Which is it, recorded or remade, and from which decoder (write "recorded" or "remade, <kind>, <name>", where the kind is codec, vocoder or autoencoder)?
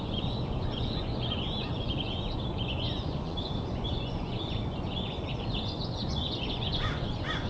remade, vocoder, Vocos